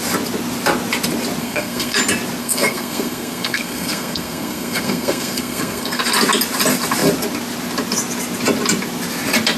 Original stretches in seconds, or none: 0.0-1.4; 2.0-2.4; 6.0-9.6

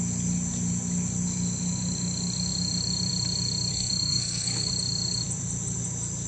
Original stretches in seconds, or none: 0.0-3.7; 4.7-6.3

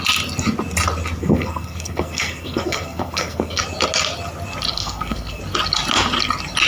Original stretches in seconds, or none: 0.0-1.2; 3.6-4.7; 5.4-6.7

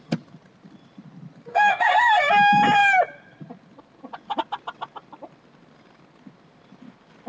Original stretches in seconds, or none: 0.0-1.5; 2.3-7.3

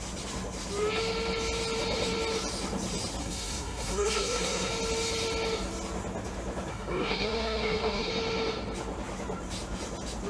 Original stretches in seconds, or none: 0.0-3.2; 4.7-6.7; 8.1-10.3

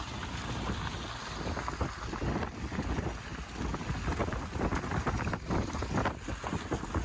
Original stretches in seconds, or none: 0.0-7.0